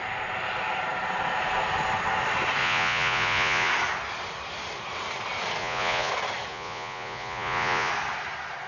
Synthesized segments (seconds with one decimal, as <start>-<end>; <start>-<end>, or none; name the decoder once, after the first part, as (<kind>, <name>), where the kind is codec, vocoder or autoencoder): 2.6-3.7 (vocoder, Vocos); 5.6-6.1; 6.5-7.9